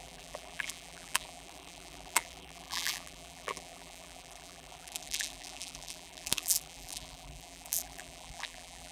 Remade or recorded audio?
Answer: remade